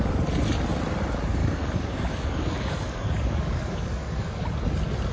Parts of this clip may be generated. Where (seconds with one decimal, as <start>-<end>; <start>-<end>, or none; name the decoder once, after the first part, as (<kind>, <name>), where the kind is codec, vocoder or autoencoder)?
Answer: 1.4-4.5 (codec, DAC)